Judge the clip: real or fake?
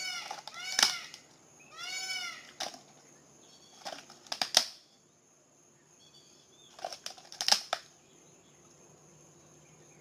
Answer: real